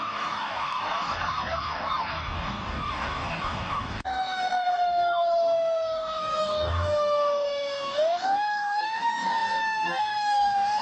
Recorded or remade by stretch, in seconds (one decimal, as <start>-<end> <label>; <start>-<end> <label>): 0.0-10.8 remade